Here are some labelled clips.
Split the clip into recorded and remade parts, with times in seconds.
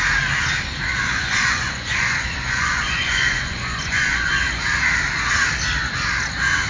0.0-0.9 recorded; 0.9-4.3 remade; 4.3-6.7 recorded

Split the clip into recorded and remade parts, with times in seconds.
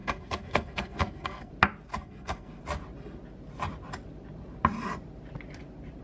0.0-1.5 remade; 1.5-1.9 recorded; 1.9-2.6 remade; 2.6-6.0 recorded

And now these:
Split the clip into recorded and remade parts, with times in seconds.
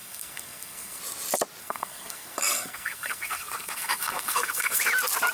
0.0-1.0 remade; 1.0-1.6 recorded; 1.6-4.8 remade; 4.8-5.3 recorded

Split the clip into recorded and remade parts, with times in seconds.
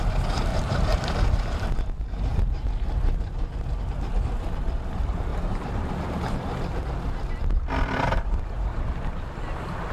0.0-0.5 recorded; 0.5-1.7 remade; 1.7-2.3 recorded; 2.3-3.3 remade; 3.3-5.3 recorded; 5.3-5.9 remade; 5.9-9.9 recorded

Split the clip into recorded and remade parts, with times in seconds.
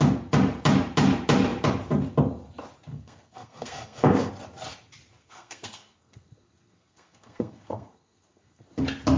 0.0-2.9 recorded; 2.9-4.3 remade; 4.3-5.2 recorded; 5.2-8.7 remade; 8.7-9.2 recorded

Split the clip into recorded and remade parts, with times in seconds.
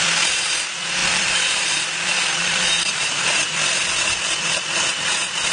0.0-1.0 recorded; 1.0-3.4 remade; 3.4-5.5 recorded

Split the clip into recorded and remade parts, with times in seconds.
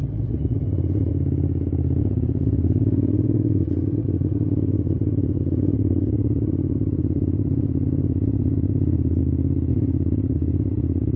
0.0-1.1 remade; 1.1-2.0 recorded; 2.0-9.2 remade; 9.2-9.7 recorded; 9.7-11.2 remade